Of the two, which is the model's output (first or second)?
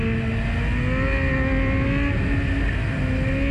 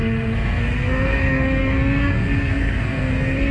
second